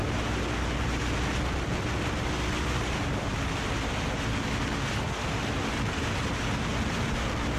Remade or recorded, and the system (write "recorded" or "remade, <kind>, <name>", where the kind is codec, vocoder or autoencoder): recorded